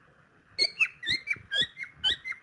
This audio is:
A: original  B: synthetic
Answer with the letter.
A